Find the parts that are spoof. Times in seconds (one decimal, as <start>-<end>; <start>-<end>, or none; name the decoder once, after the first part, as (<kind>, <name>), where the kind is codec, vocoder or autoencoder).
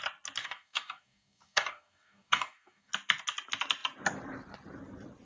0.4-2.9 (codec, DAC)